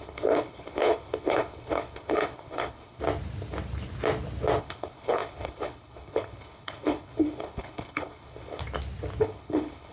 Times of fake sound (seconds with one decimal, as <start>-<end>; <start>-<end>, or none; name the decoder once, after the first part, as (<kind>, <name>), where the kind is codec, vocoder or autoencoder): 0.0-3.0 (codec, HILCodec); 4.6-8.6; 9.2-9.9